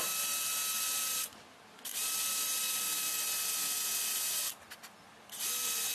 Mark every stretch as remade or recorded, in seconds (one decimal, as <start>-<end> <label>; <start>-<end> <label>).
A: 0.0-5.9 recorded